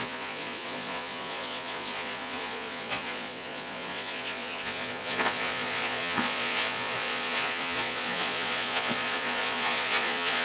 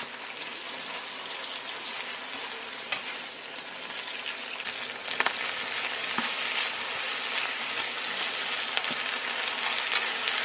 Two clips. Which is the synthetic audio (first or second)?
first